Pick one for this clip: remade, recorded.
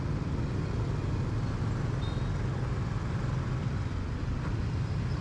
recorded